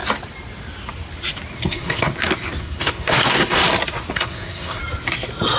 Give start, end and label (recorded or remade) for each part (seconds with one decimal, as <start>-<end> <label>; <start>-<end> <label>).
0.0-1.6 recorded; 1.6-2.1 remade; 2.1-2.6 recorded; 2.6-3.6 remade; 3.6-4.1 recorded; 4.1-4.8 remade; 4.8-5.6 recorded